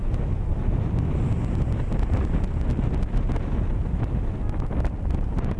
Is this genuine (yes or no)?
yes